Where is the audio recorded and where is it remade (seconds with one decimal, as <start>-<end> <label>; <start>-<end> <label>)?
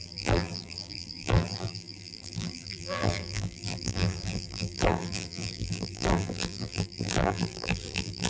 0.0-8.3 remade